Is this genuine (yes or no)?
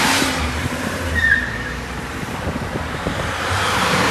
no